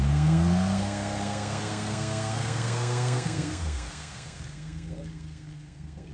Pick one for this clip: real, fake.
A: fake